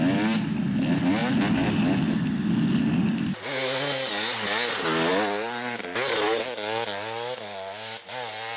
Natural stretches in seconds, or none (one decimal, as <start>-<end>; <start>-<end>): 0.0-8.6